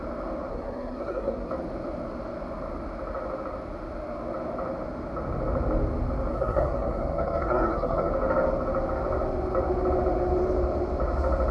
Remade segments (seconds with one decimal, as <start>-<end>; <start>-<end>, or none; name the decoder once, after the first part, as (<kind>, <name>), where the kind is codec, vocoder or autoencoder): 0.5-1.5 (codec, SNAC); 6.3-8.1